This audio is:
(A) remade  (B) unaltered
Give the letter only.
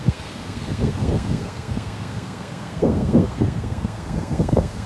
A